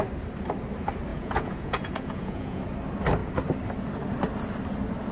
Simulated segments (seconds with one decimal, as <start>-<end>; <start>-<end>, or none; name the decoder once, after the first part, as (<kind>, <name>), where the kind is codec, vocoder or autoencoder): 1.1-2.6 (vocoder, Vocos)